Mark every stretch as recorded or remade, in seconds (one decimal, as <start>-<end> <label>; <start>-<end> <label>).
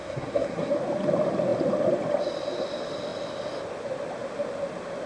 0.0-0.7 remade; 0.7-5.1 recorded